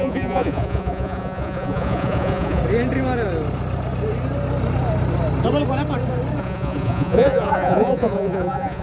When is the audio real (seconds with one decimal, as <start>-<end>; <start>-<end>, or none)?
2.6-6.4